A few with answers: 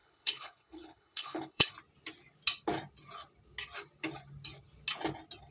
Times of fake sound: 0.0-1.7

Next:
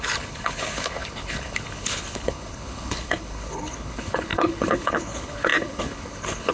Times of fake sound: 0.0-6.5